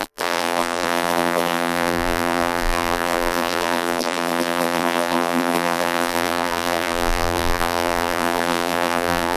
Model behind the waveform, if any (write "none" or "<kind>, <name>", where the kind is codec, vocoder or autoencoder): vocoder, BigVGAN v2